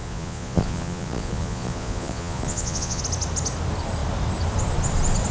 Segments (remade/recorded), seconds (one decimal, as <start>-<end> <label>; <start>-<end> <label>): 0.0-3.0 remade; 3.0-5.3 recorded